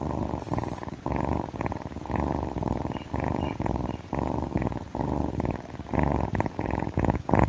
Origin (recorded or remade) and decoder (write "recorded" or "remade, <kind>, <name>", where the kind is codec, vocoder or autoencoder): remade, vocoder, Vocos